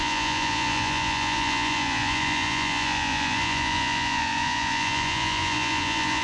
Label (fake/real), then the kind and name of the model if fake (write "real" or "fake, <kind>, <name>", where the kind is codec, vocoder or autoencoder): fake, vocoder, Vocos